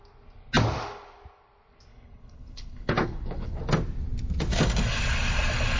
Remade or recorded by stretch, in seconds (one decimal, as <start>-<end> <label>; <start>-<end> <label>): 0.0-1.9 recorded; 1.9-3.6 remade; 3.6-5.8 recorded